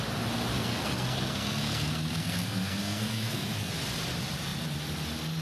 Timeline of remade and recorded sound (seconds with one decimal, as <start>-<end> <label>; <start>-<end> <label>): 0.0-0.5 recorded; 0.5-3.7 remade; 3.7-5.4 recorded